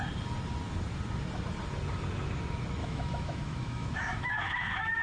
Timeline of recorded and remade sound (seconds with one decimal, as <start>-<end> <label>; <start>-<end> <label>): 0.0-2.8 recorded; 2.8-5.0 remade